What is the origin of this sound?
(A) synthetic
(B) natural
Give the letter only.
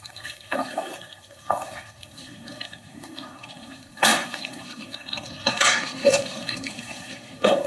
A